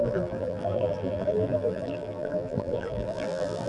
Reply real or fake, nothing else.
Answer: fake